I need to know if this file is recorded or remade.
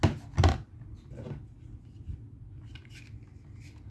recorded